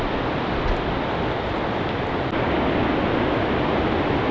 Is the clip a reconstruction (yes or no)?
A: no